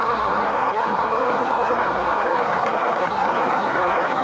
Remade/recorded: remade